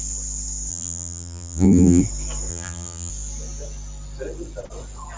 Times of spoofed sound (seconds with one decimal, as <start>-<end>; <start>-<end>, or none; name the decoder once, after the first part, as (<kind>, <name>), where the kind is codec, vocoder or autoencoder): 0.7-2.0 (vocoder, BigVGAN v2); 2.5-3.1